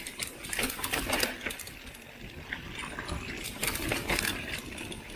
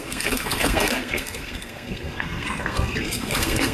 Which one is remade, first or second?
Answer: second